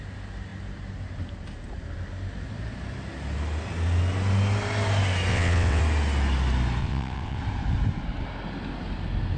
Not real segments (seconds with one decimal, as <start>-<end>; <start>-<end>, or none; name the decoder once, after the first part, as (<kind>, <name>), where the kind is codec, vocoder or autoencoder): 5.3-5.8 (vocoder, WaveNeXt); 6.8-7.4